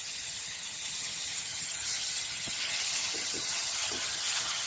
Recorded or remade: remade